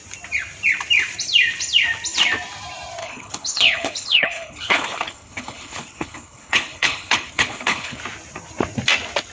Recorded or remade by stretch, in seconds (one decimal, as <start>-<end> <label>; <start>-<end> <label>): 0.0-3.0 recorded; 3.0-8.0 remade; 8.0-9.3 recorded